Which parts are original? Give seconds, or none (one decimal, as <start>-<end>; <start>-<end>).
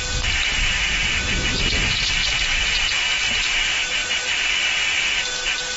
0.0-5.8